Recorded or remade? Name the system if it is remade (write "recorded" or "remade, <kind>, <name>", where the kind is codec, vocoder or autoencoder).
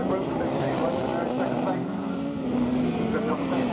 recorded